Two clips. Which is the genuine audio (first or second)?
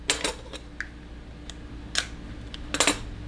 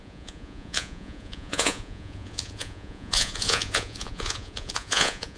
first